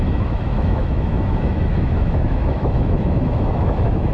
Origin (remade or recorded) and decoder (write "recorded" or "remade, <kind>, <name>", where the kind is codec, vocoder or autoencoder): remade, autoencoder, DAC-VAE